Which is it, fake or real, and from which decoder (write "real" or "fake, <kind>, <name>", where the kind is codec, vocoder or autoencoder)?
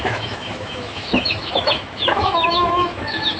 fake, autoencoder, DAC-VAE